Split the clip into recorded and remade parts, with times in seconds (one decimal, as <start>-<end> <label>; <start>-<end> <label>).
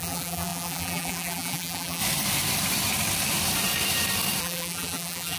0.0-2.0 remade; 2.0-4.4 recorded; 4.4-5.4 remade